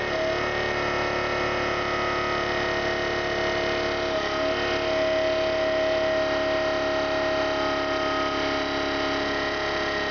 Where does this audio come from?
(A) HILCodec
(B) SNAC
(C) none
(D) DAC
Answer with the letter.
C